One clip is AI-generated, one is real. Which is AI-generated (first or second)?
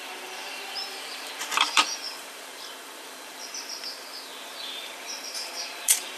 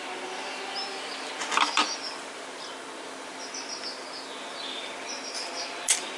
first